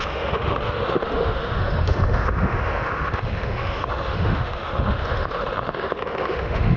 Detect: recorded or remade remade